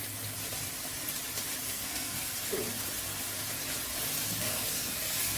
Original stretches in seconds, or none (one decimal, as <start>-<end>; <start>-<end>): 0.0-1.6; 2.5-4.2